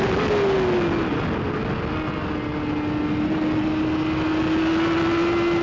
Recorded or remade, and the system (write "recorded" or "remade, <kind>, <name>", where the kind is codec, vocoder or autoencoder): recorded